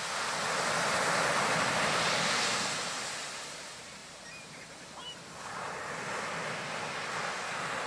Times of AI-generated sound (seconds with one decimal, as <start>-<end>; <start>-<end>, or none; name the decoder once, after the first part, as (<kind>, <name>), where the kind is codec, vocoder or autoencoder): none